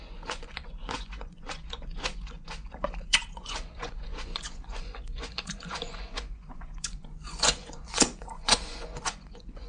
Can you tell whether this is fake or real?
fake